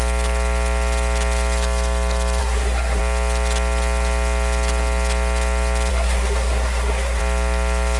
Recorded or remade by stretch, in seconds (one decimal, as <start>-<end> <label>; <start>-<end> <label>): 0.0-2.4 recorded; 2.4-3.0 remade; 3.0-5.9 recorded; 5.9-7.2 remade; 7.2-8.0 recorded